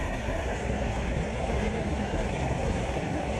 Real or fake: fake